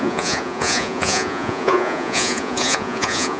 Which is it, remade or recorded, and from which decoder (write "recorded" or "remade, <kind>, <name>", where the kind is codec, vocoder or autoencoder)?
remade, vocoder, Vocos